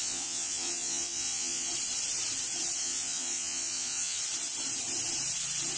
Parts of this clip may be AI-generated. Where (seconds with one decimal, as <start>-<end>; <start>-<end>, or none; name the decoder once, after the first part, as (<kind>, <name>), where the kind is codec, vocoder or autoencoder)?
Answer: 0.0-1.7 (vocoder, Vocos); 2.8-4.2